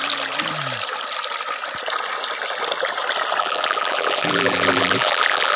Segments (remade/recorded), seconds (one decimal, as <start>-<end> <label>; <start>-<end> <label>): 0.0-3.4 recorded; 3.4-5.6 remade